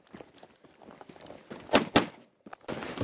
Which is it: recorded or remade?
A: recorded